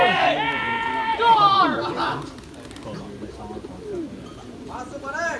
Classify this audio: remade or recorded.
recorded